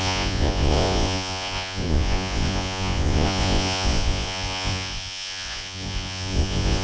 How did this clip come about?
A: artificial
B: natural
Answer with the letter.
A